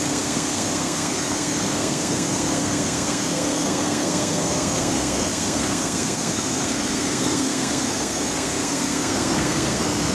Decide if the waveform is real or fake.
fake